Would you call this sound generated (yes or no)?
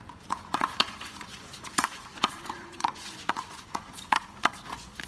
yes